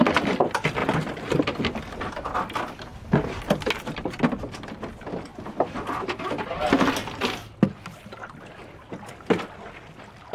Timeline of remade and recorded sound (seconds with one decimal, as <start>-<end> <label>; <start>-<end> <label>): 0.0-10.3 recorded